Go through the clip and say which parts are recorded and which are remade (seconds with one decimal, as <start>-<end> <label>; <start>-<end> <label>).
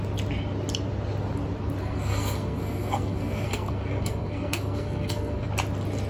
0.0-1.8 recorded; 1.8-5.5 remade; 5.5-6.1 recorded